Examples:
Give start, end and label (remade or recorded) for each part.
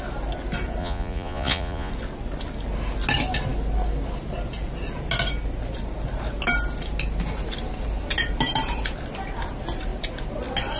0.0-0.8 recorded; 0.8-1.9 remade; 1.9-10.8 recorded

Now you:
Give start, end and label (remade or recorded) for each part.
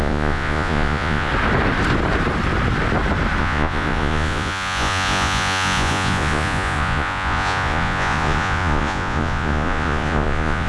0.0-1.3 remade; 1.3-3.4 recorded; 3.4-10.7 remade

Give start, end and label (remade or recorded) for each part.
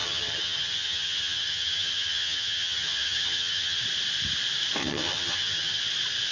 0.0-3.8 remade; 3.8-4.8 recorded; 4.8-5.8 remade; 5.8-6.3 recorded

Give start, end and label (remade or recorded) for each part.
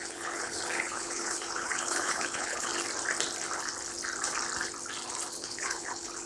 0.0-2.7 remade; 2.7-5.3 recorded; 5.3-6.3 remade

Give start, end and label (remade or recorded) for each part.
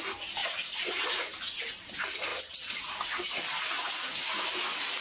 0.0-5.0 recorded